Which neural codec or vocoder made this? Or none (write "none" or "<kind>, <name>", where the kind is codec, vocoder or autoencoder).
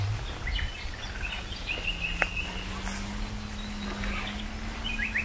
none